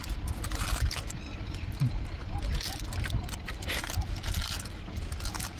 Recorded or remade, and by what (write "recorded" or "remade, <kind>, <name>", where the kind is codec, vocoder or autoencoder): recorded